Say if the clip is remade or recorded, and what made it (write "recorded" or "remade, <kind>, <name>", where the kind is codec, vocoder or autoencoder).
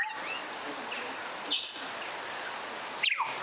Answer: recorded